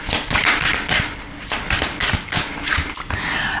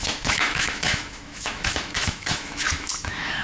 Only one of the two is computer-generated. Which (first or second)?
second